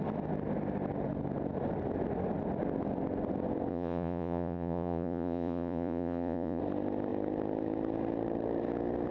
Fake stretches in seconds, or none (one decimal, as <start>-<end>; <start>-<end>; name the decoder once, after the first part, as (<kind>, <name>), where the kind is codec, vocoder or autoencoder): 3.7-6.6 (vocoder, Vocos)